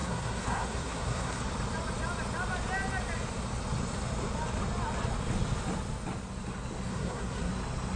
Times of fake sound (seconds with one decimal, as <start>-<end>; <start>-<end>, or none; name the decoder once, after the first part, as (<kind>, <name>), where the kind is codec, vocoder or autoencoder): 0.0-1.4 (codec, SNAC); 6.9-7.5